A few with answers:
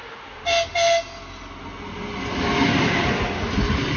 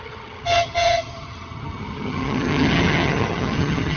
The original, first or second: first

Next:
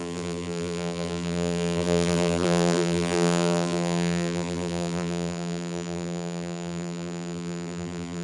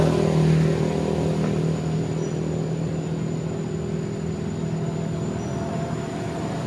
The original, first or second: second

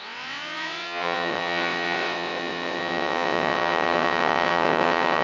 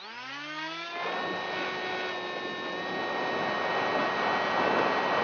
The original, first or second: second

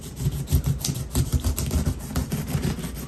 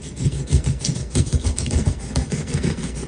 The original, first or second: first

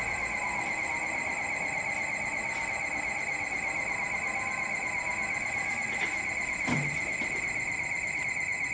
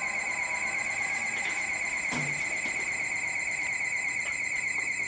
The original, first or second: second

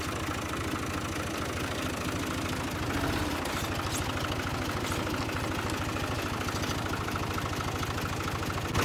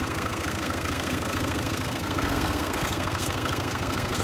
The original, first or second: first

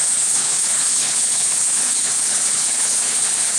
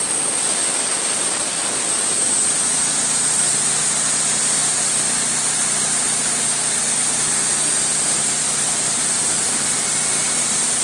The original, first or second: second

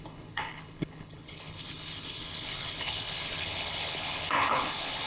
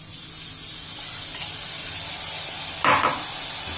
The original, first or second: second